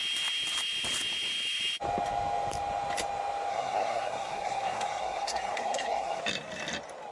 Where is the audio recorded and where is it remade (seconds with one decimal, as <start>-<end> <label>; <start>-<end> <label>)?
0.0-3.5 recorded; 3.5-6.2 remade; 6.2-7.1 recorded